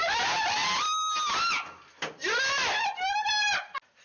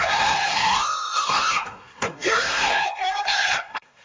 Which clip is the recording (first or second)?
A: first